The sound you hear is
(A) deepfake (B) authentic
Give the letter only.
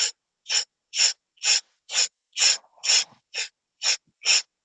A